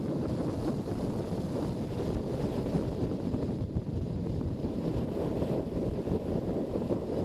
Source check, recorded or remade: recorded